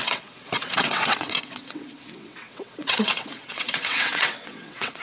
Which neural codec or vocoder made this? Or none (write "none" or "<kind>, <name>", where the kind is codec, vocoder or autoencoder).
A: vocoder, WaveNeXt